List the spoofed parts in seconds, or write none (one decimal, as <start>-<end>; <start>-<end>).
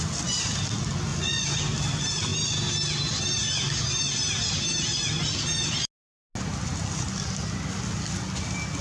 1.1-1.6